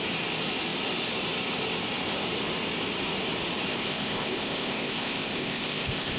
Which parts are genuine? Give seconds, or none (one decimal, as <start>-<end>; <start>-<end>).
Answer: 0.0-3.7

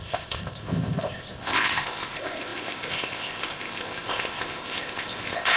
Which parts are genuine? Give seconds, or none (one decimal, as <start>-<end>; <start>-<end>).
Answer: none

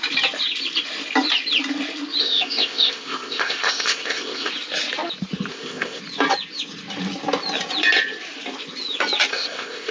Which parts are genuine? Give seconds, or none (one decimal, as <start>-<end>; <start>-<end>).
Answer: 0.0-2.2; 4.5-5.5; 6.0-9.3

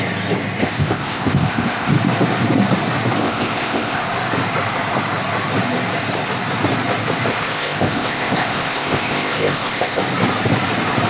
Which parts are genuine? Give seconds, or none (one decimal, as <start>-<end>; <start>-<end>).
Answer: 0.0-0.6; 1.9-3.2; 4.0-7.3; 10.0-11.1

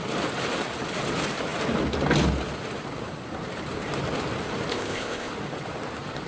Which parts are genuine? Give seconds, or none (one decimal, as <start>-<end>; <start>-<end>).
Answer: 0.0-4.7; 5.3-6.3

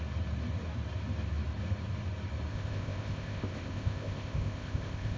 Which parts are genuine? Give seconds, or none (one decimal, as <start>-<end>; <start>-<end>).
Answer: 0.0-2.5

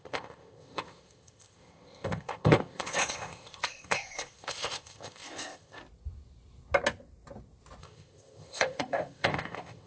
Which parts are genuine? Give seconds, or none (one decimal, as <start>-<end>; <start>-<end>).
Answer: 5.8-7.8